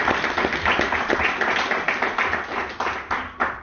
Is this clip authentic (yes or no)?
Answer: yes